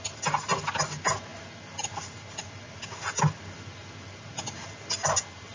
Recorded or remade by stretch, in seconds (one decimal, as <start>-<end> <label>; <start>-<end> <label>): 0.0-5.5 recorded